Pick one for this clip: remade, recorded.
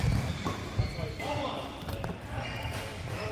recorded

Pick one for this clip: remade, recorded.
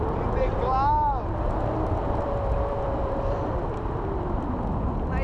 recorded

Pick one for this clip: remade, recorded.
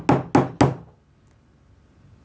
recorded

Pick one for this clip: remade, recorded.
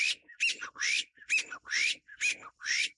recorded